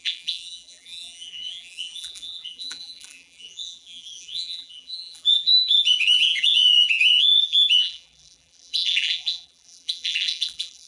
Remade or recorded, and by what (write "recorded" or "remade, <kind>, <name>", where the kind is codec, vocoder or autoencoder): remade, vocoder, BigVGAN v2